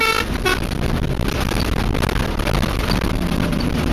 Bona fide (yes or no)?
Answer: yes